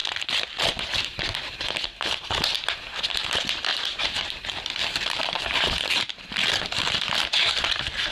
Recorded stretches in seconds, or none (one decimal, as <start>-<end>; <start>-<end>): 1.7-3.7; 6.2-8.1